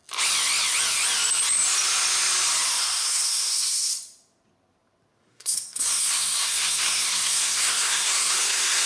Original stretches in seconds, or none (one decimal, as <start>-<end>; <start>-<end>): 0.0-2.8; 3.9-5.3